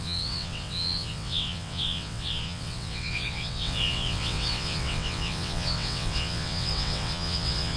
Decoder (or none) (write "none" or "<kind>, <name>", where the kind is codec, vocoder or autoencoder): vocoder, WaveNeXt